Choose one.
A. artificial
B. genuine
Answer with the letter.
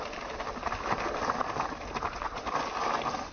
B